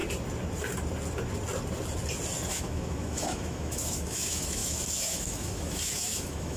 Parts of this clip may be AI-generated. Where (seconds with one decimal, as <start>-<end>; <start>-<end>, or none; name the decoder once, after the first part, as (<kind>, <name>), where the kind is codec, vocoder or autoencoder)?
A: 2.5-6.6 (autoencoder, DAC-VAE)